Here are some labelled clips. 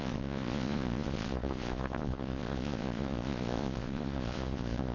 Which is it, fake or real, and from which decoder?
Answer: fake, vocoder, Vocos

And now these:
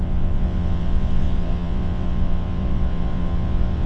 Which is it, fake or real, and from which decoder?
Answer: fake, vocoder, WaveNeXt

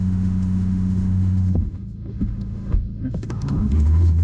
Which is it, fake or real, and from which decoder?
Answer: fake, autoencoder, DAC-VAE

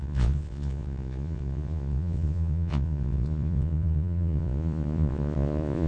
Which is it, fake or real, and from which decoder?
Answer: fake, vocoder, Vocos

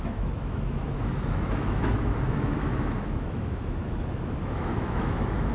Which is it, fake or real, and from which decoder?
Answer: fake, autoencoder, DAC-VAE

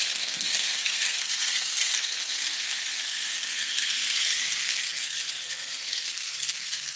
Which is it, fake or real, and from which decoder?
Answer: fake, codec, SNAC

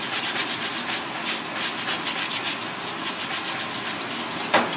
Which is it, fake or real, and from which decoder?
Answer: real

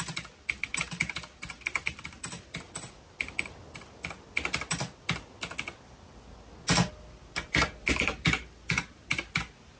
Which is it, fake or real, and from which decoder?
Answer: real